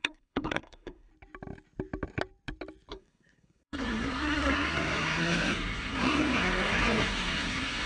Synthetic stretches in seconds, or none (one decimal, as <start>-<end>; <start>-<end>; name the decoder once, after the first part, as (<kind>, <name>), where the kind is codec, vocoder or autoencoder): 0.0-1.1 (codec, SNAC); 2.9-7.9